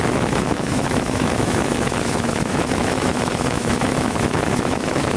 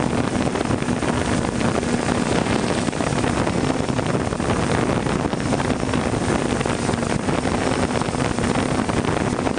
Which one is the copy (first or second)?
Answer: first